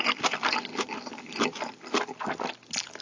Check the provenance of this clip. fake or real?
real